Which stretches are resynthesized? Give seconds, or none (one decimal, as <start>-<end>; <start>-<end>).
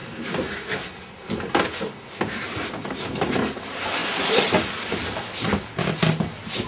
none